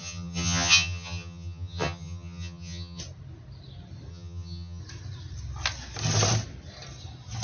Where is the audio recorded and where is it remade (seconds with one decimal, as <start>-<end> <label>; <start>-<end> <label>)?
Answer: 0.0-3.0 remade; 3.0-4.1 recorded; 4.1-4.8 remade; 4.8-7.4 recorded